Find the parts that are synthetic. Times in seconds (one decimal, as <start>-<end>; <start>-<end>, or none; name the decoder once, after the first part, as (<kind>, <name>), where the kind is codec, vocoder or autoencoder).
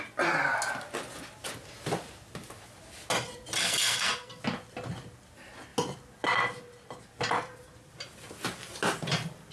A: 3.6-4.4 (codec, SNAC)